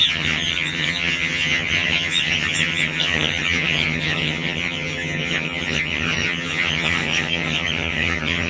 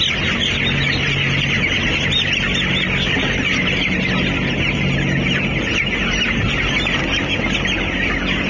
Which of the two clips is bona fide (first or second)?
second